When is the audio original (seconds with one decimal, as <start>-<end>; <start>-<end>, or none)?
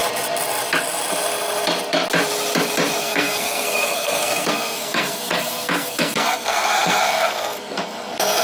0.0-3.0